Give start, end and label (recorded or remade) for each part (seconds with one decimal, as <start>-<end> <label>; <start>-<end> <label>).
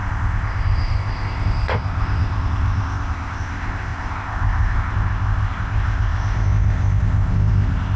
0.0-8.0 remade